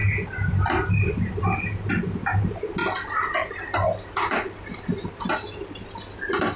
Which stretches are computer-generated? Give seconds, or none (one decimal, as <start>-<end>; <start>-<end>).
none